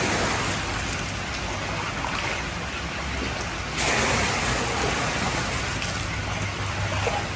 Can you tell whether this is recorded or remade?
recorded